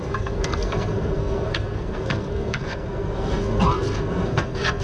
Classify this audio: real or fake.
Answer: fake